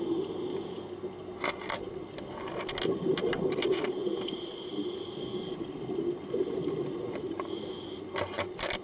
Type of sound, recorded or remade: recorded